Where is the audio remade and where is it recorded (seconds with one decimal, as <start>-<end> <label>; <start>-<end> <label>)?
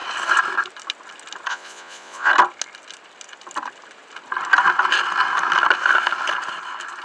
0.0-1.5 recorded; 1.5-2.3 remade; 2.3-7.0 recorded